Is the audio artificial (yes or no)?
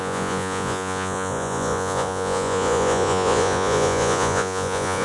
yes